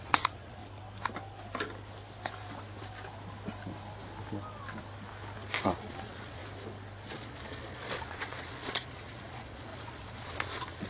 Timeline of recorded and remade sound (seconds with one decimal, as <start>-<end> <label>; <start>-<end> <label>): 0.0-0.6 remade; 0.6-5.6 recorded; 5.6-6.4 remade; 6.4-7.1 recorded; 7.1-10.9 remade